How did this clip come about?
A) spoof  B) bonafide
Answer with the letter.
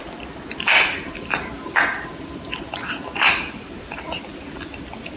A